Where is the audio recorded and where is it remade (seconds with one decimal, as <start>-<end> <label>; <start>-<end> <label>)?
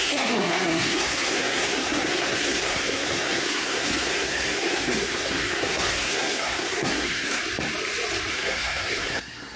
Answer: 0.0-7.4 remade; 7.4-8.3 recorded; 8.3-9.6 remade